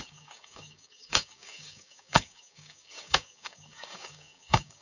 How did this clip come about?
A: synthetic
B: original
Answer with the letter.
A